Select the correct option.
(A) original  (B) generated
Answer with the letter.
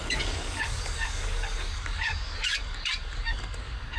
B